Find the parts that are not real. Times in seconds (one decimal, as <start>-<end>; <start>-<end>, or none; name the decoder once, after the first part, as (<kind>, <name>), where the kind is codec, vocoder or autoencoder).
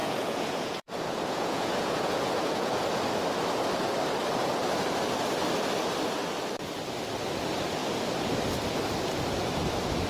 0.0-2.8 (vocoder, Vocos)